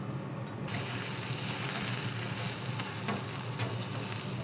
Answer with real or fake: real